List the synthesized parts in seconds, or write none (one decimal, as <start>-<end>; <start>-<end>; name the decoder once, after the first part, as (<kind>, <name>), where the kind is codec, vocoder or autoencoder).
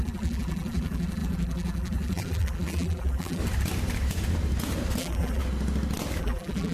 0.0-3.4 (vocoder, BigVGAN v2); 5.0-5.4; 6.2-6.7